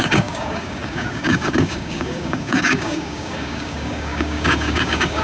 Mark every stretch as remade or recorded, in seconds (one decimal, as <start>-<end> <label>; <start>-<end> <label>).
0.0-5.2 remade